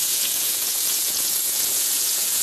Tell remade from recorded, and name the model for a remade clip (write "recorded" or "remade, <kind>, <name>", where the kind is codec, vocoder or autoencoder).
remade, vocoder, Vocos